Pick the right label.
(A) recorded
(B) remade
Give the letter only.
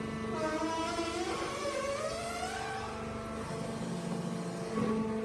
A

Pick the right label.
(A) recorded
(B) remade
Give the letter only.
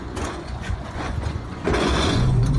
B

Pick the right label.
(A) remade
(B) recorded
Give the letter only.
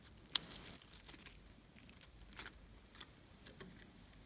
B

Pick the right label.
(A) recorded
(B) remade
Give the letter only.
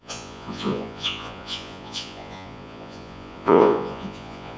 B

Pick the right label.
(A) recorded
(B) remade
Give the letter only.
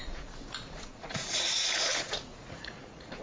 B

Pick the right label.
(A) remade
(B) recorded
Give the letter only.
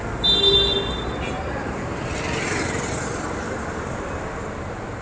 B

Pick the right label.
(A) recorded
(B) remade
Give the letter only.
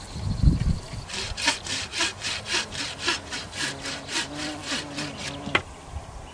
A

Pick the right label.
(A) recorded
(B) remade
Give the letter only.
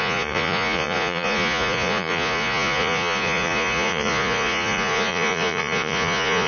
B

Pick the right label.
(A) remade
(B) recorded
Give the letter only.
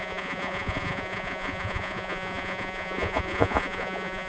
A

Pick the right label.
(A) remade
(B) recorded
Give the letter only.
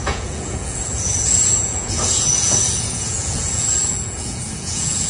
A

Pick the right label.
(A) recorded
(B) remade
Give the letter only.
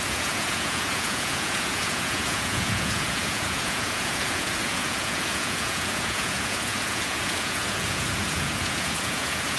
B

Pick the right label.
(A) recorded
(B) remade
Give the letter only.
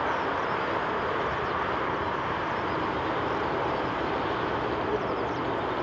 A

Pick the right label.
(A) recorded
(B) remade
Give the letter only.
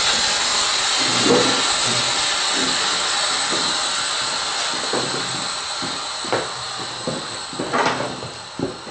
A